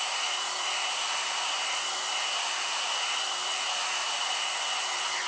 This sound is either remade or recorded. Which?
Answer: remade